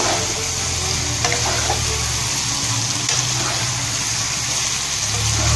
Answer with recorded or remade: recorded